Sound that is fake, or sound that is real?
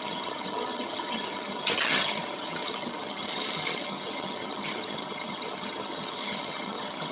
fake